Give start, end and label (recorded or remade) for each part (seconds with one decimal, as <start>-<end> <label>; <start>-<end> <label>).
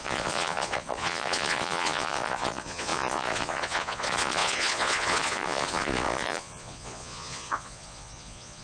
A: 0.0-8.6 remade